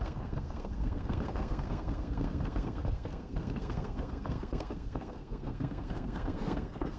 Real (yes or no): no